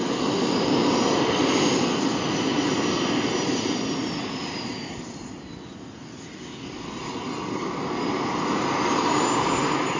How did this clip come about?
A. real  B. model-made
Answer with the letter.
A